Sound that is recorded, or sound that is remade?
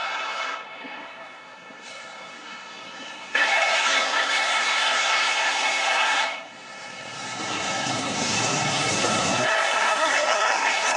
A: remade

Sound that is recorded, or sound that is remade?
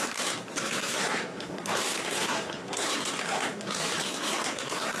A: remade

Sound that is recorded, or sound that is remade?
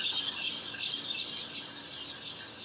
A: recorded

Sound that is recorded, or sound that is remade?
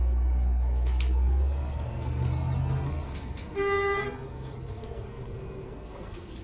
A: remade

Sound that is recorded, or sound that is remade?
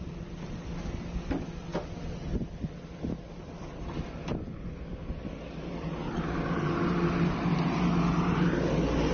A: recorded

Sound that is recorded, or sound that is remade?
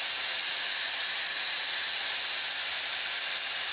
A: recorded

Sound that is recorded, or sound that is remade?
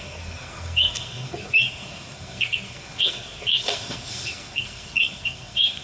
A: remade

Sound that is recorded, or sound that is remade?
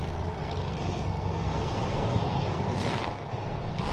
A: remade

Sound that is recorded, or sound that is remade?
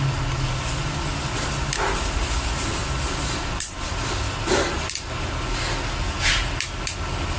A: recorded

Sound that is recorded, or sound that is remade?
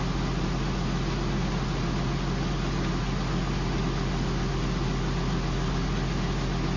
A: recorded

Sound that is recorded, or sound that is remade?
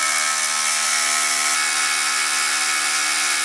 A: recorded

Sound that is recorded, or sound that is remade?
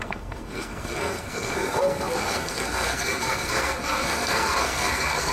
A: remade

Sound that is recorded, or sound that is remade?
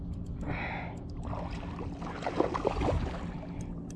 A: recorded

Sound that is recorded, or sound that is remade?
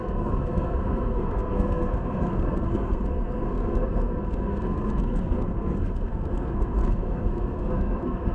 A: remade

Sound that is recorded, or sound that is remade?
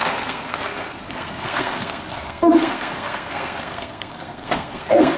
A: remade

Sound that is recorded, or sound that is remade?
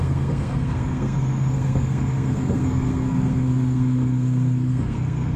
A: remade